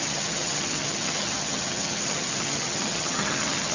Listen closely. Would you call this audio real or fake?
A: fake